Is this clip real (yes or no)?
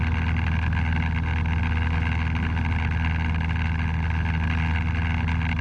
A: yes